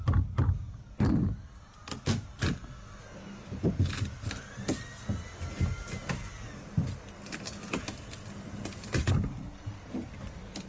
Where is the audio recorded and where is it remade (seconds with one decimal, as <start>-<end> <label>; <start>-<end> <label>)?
0.0-10.7 recorded